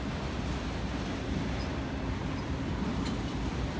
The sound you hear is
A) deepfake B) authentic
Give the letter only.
B